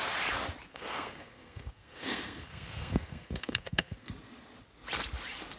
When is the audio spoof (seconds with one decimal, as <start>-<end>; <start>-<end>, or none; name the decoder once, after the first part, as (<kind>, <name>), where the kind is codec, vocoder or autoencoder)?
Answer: 0.7-4.1 (codec, SNAC)